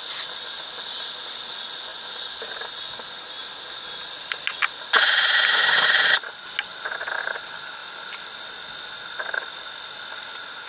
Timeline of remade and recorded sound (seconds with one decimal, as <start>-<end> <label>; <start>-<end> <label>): 0.0-10.7 recorded